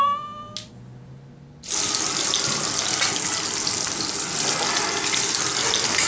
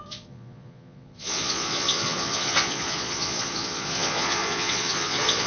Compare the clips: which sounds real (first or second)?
first